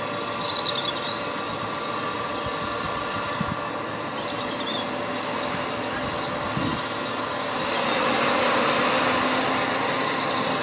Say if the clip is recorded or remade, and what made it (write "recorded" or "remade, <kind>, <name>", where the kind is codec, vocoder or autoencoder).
recorded